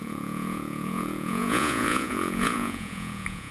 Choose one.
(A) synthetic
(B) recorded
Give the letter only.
A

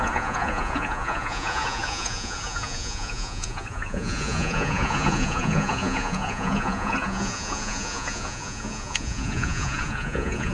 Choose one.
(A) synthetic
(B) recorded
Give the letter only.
A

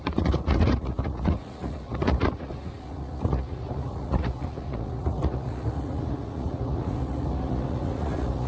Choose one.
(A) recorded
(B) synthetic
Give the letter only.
B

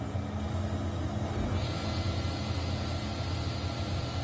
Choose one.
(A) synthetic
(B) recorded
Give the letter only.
B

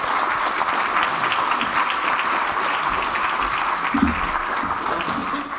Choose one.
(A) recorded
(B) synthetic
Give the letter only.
A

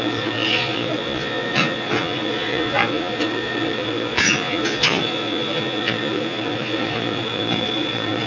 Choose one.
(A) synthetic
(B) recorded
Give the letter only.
A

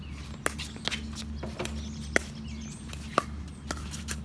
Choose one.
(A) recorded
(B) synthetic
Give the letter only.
A